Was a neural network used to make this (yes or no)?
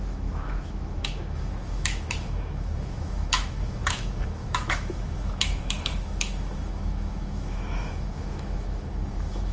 yes